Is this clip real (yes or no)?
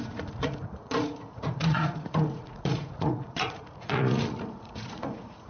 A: no